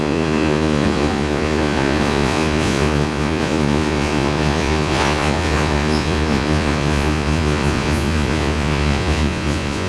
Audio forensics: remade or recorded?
remade